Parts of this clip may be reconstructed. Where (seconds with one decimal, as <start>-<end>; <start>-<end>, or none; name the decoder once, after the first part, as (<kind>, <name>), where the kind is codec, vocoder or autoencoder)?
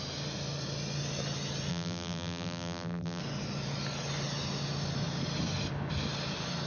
1.7-3.2 (vocoder, BigVGAN v2)